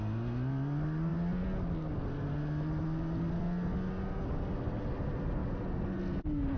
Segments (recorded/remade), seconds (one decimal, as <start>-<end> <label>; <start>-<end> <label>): 0.0-6.6 recorded